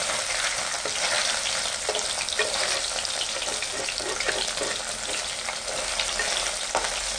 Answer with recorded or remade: recorded